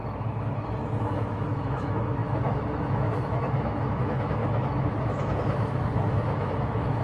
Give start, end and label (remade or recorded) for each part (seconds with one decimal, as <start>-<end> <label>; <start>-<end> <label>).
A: 0.0-1.0 recorded; 1.0-7.0 remade